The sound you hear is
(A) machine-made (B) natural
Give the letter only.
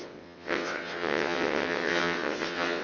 A